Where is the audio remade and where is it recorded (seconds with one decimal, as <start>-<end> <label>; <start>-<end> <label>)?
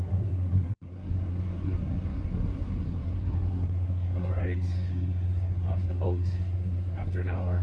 0.0-7.6 remade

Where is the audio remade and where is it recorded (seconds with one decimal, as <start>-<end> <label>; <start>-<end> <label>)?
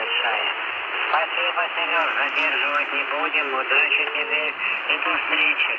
0.0-5.8 recorded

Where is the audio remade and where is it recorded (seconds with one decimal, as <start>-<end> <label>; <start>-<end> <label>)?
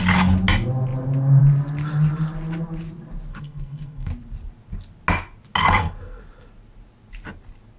0.0-3.3 recorded; 3.3-4.1 remade; 4.1-5.6 recorded; 5.6-6.2 remade; 6.2-7.8 recorded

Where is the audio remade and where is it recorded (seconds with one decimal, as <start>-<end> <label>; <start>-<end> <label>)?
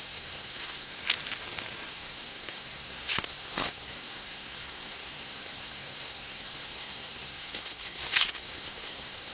0.0-0.9 remade; 0.9-1.9 recorded; 1.9-9.3 remade